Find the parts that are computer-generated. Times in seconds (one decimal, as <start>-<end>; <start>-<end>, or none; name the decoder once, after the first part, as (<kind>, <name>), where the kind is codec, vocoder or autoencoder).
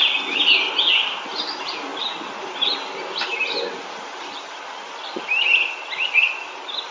none